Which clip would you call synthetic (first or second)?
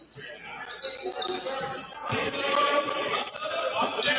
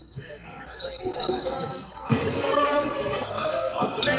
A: second